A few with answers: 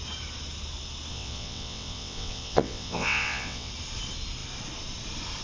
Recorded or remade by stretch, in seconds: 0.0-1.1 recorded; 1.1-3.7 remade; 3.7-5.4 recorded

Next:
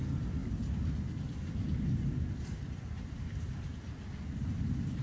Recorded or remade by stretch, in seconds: 0.0-5.0 recorded

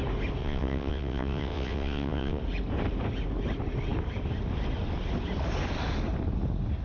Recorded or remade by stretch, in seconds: 0.0-0.4 recorded; 0.4-2.4 remade; 2.4-6.8 recorded

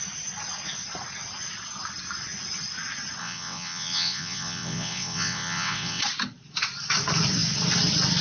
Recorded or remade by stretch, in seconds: 0.0-3.2 recorded; 3.2-6.0 remade; 6.0-8.2 recorded

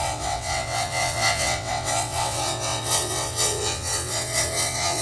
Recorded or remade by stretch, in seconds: 0.0-5.0 remade